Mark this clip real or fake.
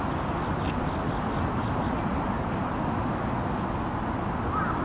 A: real